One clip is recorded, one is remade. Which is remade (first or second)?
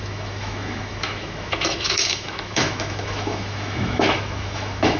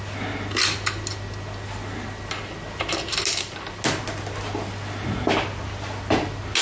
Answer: first